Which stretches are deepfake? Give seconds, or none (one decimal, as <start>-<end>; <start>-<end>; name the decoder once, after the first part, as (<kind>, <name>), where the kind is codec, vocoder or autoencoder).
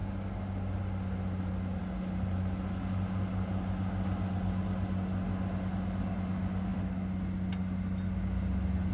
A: none